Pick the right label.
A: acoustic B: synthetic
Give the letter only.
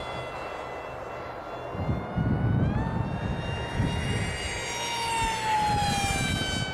A